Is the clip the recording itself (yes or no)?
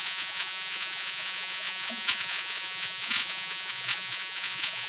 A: no